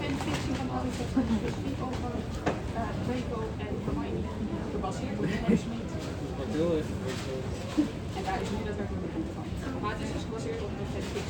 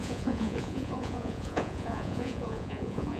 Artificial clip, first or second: second